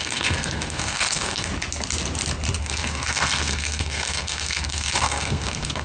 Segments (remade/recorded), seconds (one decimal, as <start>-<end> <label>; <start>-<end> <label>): 0.0-1.5 remade; 1.5-2.6 recorded; 2.6-5.8 remade